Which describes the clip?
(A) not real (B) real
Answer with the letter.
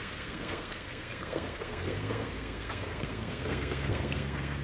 A